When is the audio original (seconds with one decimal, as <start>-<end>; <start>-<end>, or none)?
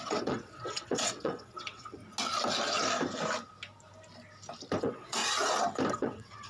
2.0-4.8; 5.2-5.9